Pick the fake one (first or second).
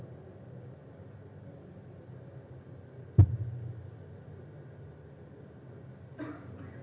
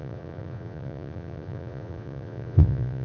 second